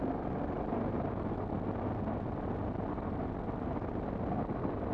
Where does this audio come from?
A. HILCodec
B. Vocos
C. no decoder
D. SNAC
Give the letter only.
C